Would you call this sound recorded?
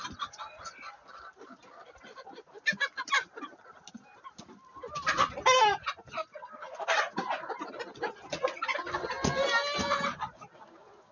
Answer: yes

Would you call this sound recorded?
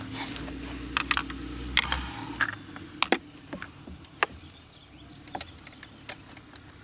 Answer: yes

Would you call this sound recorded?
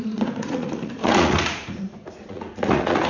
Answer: no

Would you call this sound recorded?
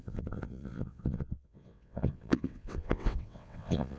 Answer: no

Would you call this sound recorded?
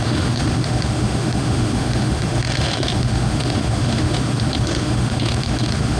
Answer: no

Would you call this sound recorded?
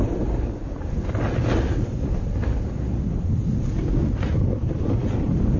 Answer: yes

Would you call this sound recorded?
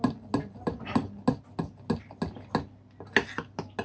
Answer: yes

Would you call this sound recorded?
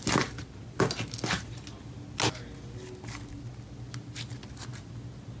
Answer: yes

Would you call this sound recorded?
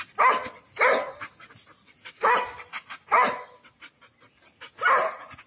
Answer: yes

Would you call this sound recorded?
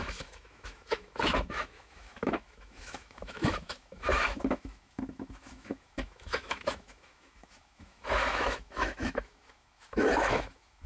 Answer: no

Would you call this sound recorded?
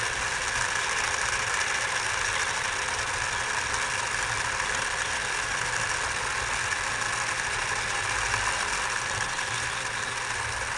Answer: yes